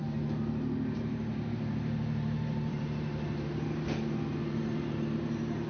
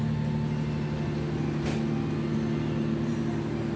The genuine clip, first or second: second